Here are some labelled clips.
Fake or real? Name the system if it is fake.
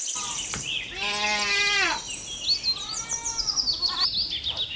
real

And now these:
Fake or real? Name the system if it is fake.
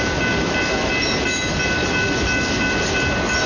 real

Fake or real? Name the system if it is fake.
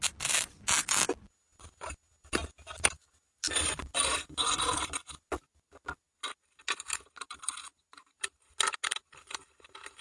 real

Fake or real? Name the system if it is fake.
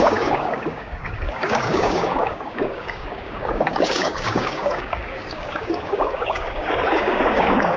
fake, codec, DAC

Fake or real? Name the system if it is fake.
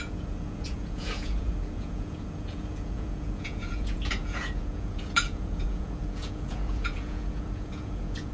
fake, vocoder, Vocos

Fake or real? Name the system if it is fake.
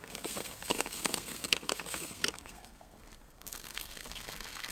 fake, codec, SNAC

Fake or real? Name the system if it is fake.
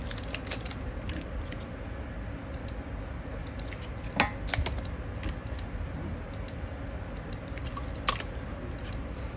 real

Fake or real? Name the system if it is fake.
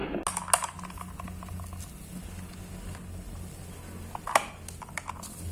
real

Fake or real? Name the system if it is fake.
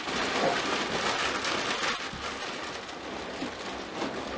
real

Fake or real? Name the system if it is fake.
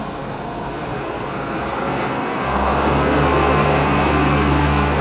fake, codec, SNAC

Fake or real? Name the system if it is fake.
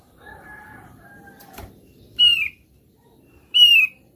fake, vocoder, BigVGAN v2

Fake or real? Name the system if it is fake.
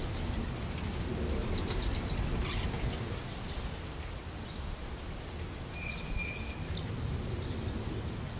real